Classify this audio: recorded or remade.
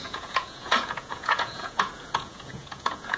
remade